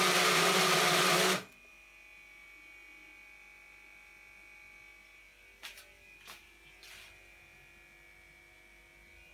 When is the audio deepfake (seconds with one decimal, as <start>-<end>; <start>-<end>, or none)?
none

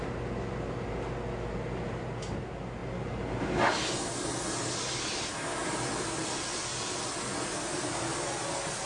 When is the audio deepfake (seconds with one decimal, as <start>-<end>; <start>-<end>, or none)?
none

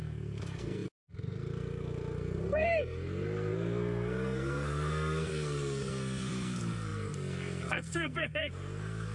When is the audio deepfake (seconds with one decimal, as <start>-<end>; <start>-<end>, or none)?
0.0-9.1